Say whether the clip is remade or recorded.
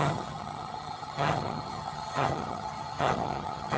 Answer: remade